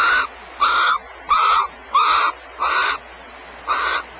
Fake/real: real